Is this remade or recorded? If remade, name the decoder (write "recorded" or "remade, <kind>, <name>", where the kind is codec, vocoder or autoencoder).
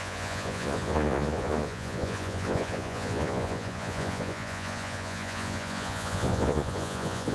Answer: remade, vocoder, Vocos